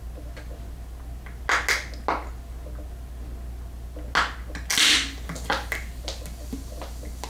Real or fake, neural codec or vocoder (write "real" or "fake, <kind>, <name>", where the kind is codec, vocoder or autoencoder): real